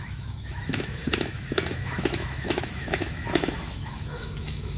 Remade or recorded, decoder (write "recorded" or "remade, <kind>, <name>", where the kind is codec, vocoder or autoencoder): remade, autoencoder, DAC-VAE